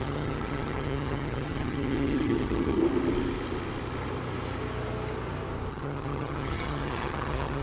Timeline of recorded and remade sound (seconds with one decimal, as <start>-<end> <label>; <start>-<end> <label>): 0.0-2.8 remade; 2.8-5.7 recorded; 5.7-7.6 remade